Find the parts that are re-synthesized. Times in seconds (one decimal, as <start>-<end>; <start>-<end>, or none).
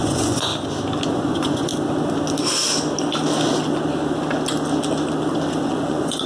0.0-0.5; 1.1-1.7; 5.5-6.3